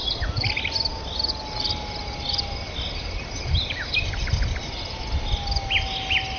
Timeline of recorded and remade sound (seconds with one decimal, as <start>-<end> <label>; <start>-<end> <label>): 0.0-6.4 recorded